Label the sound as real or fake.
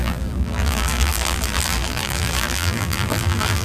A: fake